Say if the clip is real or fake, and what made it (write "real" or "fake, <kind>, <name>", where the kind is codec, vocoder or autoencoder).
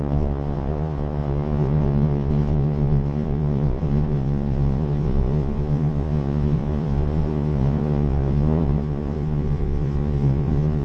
fake, vocoder, Vocos